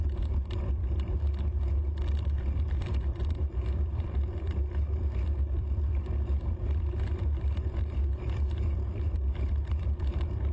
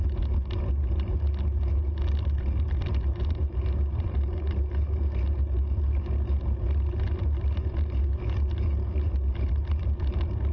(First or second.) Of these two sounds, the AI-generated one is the first